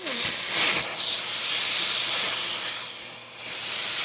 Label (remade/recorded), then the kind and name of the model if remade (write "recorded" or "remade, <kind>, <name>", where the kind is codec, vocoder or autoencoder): recorded